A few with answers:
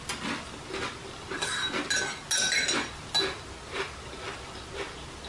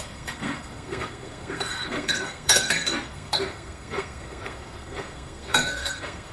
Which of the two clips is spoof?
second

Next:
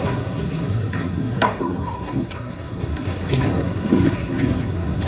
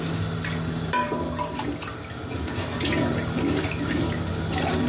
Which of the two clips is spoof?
first